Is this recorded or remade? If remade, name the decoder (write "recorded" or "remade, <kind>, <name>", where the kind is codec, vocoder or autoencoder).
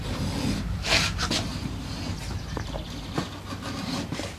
remade, vocoder, BigVGAN v2